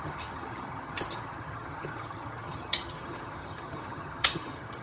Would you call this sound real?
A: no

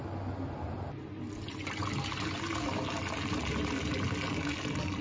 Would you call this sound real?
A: yes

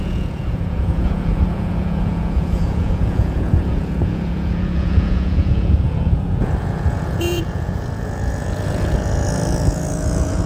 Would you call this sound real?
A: no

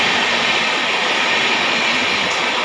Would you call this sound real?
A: yes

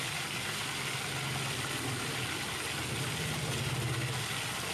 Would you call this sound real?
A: yes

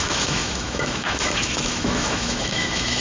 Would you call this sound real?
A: no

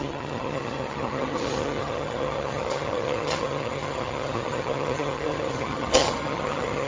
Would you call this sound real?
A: no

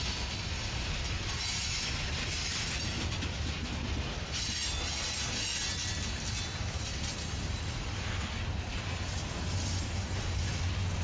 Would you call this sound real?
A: yes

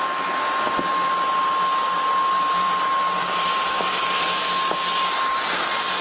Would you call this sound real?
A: yes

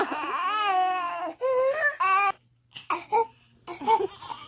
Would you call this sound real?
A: yes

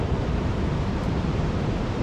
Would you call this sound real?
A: no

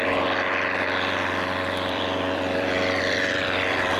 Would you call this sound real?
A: no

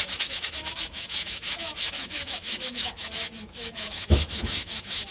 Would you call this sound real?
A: no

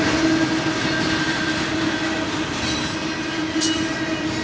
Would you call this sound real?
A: yes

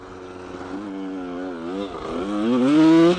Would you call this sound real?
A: yes